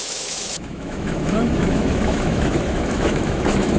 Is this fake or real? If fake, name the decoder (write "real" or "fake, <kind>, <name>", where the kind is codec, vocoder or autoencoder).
fake, autoencoder, DAC-VAE